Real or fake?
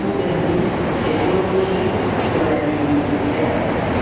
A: real